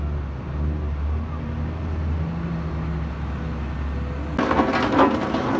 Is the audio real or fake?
real